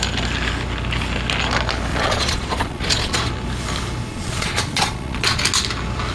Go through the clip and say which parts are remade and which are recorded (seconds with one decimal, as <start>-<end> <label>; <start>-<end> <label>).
0.0-1.9 recorded; 1.9-3.3 remade; 3.3-4.1 recorded; 4.1-5.4 remade; 5.4-6.1 recorded